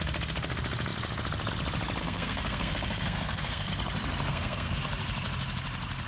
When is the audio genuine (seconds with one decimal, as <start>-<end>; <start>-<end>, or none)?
0.0-2.0; 3.7-4.3; 4.8-6.1